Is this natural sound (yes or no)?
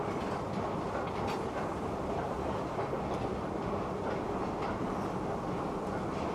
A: yes